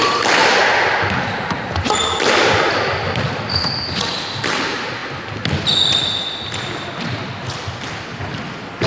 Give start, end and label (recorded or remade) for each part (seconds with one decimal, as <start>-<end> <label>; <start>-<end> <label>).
0.0-8.9 recorded